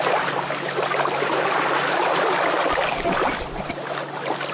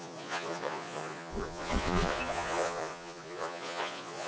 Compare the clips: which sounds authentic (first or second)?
first